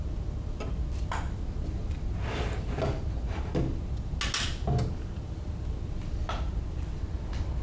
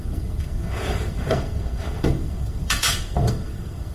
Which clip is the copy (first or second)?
second